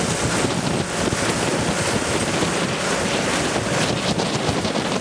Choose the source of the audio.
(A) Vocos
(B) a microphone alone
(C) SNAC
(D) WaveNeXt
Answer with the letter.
B